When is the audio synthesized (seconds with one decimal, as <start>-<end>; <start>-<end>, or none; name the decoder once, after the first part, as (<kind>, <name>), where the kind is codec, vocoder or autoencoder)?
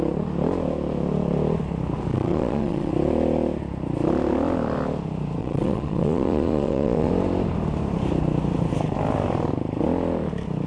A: 2.1-2.9 (vocoder, Vocos); 5.4-7.1